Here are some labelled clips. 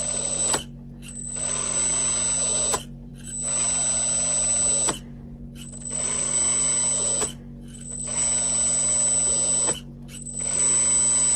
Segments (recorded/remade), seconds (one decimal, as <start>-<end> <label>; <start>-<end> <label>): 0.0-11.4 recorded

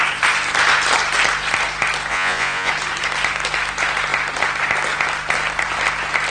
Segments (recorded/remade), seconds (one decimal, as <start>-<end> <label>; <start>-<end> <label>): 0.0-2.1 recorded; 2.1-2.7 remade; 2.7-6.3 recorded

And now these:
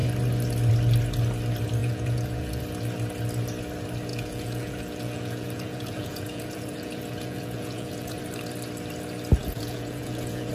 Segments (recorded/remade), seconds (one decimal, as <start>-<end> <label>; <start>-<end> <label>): 0.0-1.8 recorded; 1.8-2.6 remade; 2.6-4.1 recorded; 4.1-8.2 remade; 8.2-9.4 recorded; 9.4-10.5 remade

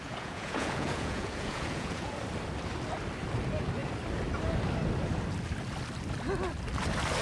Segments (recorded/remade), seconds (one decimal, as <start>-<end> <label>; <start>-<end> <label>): 0.0-2.2 remade; 2.2-7.2 recorded

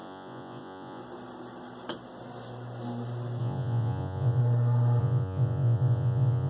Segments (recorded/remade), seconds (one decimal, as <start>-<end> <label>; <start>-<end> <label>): 0.0-1.0 remade; 1.0-3.4 recorded; 3.4-4.4 remade; 4.4-5.0 recorded; 5.0-6.5 remade

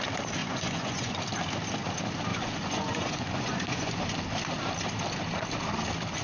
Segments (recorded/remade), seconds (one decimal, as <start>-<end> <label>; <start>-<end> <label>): 0.0-0.4 recorded; 0.4-1.1 remade; 1.1-2.3 recorded; 2.3-4.0 remade; 4.0-6.2 recorded

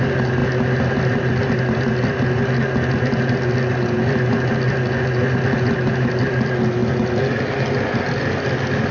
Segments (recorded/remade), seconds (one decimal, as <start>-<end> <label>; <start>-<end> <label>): 0.0-8.9 recorded

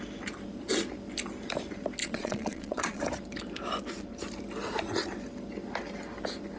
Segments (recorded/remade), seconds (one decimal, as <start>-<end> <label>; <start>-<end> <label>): 0.0-2.0 recorded; 2.0-3.0 remade; 3.0-6.6 recorded